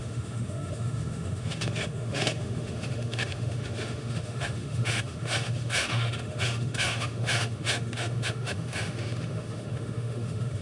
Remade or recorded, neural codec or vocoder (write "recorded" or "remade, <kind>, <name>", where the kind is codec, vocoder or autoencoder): remade, autoencoder, DAC-VAE